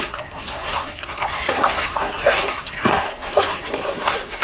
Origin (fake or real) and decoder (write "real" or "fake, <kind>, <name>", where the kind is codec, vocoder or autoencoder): fake, codec, SNAC